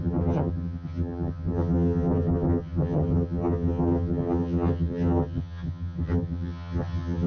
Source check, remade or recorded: remade